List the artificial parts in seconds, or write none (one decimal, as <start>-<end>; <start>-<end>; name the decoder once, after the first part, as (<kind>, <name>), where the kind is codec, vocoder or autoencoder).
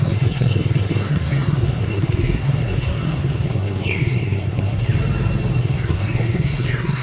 0.0-4.9 (codec, SNAC); 5.6-7.0